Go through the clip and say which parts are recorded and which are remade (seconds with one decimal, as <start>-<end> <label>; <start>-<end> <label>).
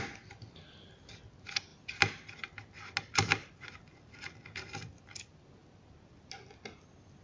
0.0-7.2 recorded